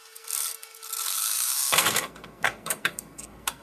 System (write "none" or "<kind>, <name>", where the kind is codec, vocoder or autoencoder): codec, SNAC